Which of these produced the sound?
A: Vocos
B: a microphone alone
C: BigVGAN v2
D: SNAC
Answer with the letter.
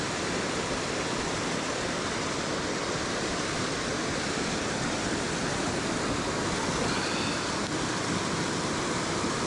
B